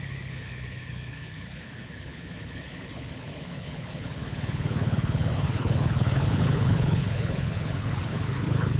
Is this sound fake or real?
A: fake